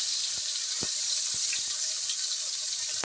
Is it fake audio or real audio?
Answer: fake